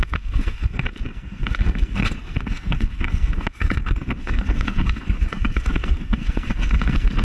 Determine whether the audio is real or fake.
fake